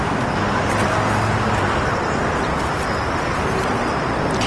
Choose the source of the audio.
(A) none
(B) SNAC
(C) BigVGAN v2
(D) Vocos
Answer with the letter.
A